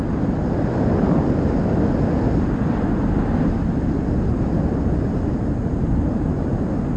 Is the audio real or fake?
real